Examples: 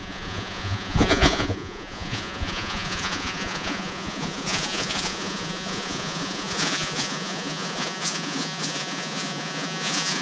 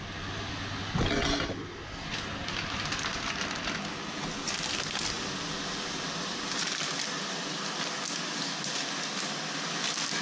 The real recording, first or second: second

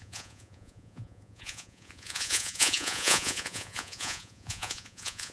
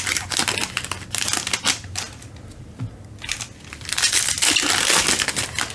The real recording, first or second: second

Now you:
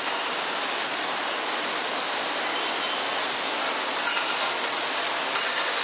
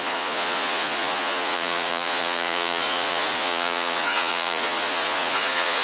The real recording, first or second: first